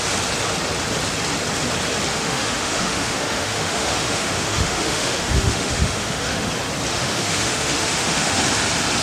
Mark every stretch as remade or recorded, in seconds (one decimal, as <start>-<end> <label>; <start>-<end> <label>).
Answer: 0.0-2.1 recorded; 2.1-6.5 remade; 6.5-6.9 recorded; 6.9-8.4 remade; 8.4-9.0 recorded